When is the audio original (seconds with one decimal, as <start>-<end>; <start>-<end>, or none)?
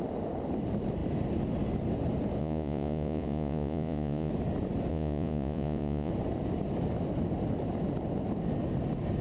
0.0-2.4; 4.3-4.9; 6.1-9.2